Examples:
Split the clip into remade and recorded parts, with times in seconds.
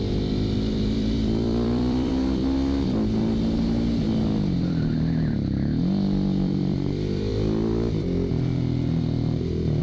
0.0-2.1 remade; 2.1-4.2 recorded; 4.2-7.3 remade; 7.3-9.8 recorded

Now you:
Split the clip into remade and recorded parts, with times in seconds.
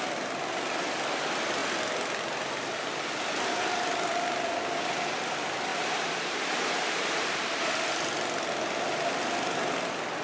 0.0-5.7 recorded; 5.7-7.7 remade; 7.7-10.2 recorded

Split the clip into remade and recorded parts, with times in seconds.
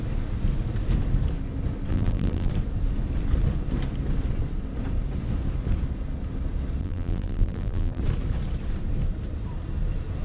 0.0-1.9 recorded; 1.9-2.5 remade; 2.5-6.8 recorded; 6.8-8.0 remade; 8.0-10.2 recorded